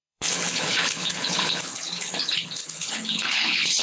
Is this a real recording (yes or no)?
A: no